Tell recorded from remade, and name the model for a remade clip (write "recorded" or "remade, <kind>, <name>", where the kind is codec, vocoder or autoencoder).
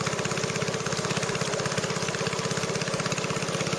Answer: recorded